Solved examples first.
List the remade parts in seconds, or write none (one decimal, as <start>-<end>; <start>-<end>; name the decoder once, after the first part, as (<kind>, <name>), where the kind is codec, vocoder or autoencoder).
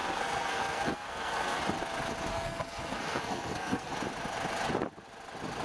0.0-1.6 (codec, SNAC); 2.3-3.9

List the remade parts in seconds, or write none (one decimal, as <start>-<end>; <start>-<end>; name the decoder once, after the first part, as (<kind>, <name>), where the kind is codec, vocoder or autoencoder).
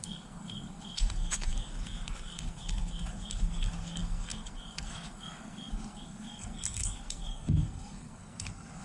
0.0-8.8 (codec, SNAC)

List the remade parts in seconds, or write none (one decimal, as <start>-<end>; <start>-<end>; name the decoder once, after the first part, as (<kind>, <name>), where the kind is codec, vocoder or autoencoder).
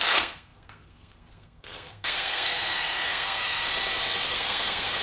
0.0-3.7 (codec, SNAC); 4.3-5.0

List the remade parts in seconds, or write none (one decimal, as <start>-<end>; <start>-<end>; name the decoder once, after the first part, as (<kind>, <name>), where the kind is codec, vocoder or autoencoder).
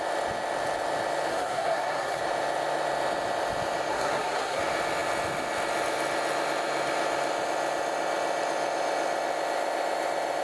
1.3-2.2 (codec, SNAC); 3.9-4.6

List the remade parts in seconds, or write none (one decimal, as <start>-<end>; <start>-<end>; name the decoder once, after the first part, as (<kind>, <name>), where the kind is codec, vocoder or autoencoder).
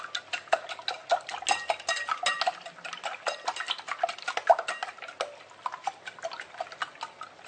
none